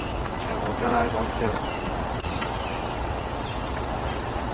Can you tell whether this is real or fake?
fake